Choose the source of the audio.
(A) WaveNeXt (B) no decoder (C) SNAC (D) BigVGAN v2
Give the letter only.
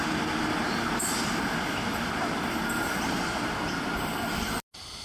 B